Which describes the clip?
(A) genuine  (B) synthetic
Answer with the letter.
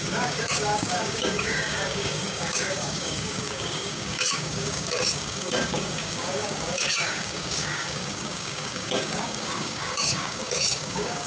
B